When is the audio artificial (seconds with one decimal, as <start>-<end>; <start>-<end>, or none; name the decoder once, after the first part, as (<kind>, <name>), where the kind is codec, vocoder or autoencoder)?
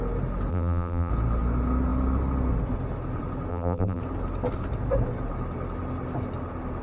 0.5-1.1 (vocoder, BigVGAN v2); 3.5-4.0